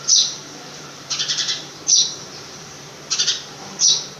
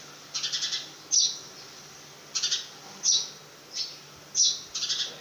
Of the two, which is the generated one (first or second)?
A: first